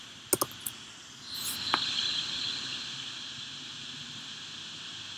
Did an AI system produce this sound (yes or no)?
no